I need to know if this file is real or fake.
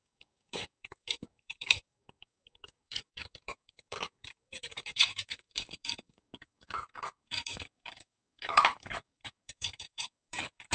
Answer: fake